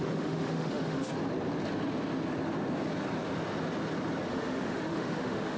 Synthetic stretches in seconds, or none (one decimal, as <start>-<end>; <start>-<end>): 0.0-1.1; 4.3-5.6